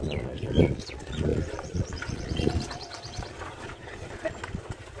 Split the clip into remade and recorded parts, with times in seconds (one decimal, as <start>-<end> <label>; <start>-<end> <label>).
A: 0.0-5.0 remade